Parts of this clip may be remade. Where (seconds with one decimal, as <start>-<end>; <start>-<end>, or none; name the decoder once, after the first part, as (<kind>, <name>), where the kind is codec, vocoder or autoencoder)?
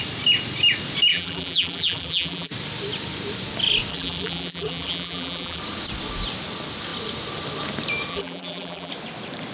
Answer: 1.1-2.5 (vocoder, BigVGAN v2); 3.9-5.6; 8.1-8.9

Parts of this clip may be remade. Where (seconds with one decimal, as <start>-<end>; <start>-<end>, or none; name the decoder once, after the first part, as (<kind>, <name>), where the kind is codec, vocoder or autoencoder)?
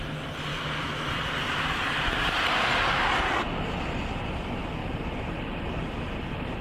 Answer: 0.5-2.4 (vocoder, BigVGAN v2); 4.8-5.3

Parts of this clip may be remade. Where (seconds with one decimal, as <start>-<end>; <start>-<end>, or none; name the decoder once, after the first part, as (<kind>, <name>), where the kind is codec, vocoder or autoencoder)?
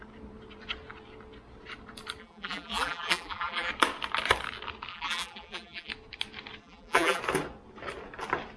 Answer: 2.2-3.7 (vocoder, BigVGAN v2); 4.9-5.9; 6.6-7.2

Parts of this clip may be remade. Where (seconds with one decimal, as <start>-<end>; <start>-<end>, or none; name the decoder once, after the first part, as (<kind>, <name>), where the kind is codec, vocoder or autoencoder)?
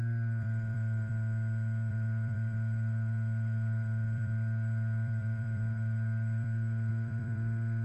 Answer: 0.0-1.1 (vocoder, BigVGAN v2); 1.9-7.8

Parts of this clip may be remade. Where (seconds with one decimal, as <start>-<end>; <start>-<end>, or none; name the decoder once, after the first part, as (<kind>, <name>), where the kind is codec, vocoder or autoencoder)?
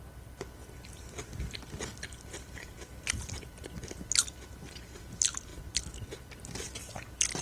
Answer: 0.6-3.9 (vocoder, BigVGAN v2)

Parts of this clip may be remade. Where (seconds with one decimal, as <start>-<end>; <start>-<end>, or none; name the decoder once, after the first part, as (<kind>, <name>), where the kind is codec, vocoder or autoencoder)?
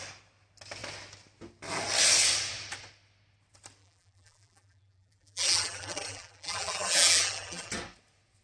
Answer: 3.8-7.7 (vocoder, BigVGAN v2)